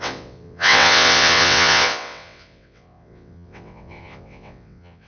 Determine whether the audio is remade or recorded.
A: remade